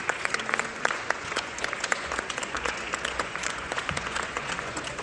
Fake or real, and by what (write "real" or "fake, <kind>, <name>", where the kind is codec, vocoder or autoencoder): fake, vocoder, Vocos